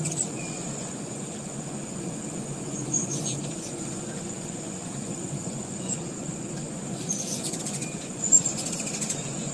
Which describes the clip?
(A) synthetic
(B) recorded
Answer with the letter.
A